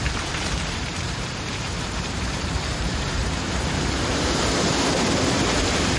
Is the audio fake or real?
fake